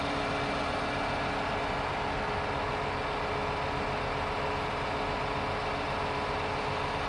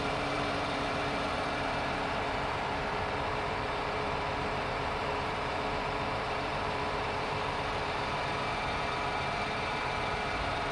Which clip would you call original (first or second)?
first